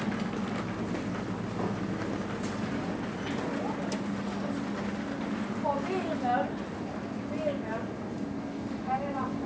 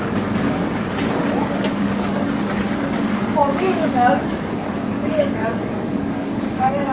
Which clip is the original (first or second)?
first